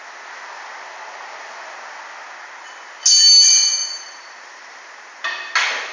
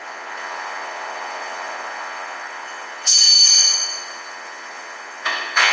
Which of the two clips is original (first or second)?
first